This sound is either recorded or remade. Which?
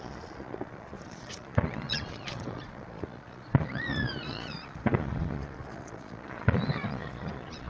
remade